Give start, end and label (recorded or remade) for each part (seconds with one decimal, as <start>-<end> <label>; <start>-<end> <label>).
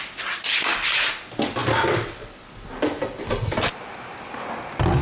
0.0-5.0 recorded